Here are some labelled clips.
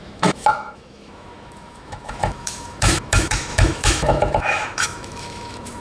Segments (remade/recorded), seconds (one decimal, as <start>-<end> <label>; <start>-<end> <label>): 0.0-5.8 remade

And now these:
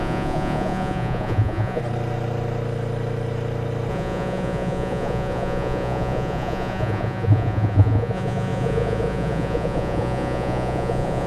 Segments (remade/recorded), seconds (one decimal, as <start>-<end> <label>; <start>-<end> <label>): 0.0-1.8 remade; 1.8-3.9 recorded; 3.9-11.3 remade

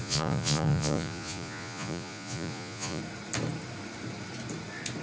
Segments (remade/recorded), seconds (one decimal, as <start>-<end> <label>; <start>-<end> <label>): 0.0-3.0 remade; 3.0-5.0 recorded

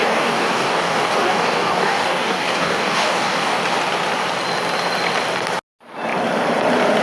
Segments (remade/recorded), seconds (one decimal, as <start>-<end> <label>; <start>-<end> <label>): 0.0-3.6 remade; 3.6-7.0 recorded